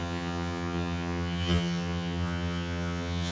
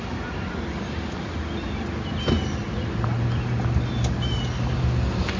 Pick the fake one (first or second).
first